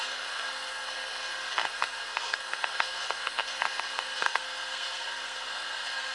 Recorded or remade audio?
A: remade